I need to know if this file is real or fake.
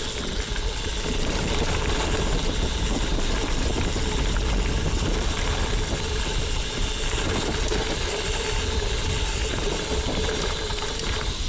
fake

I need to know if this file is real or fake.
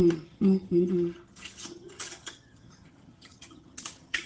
fake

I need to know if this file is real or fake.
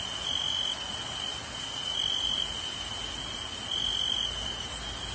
real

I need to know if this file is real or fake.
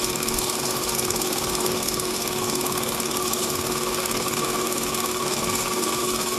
fake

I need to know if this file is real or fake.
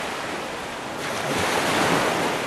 real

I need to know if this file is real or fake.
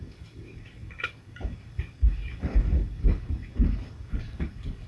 fake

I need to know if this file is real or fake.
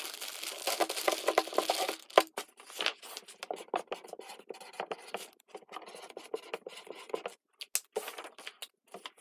real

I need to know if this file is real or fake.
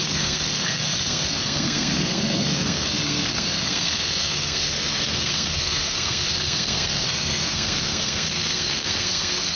fake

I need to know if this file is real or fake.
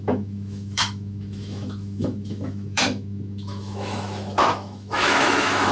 fake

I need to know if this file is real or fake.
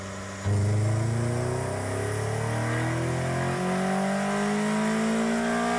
real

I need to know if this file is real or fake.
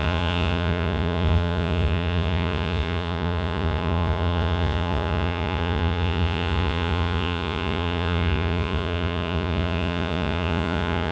fake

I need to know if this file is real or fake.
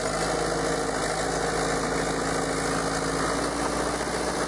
real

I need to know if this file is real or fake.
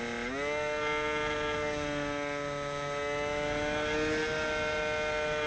real